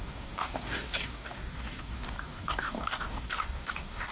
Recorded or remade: remade